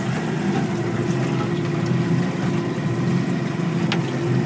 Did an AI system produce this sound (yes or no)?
no